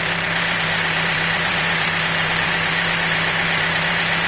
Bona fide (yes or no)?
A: no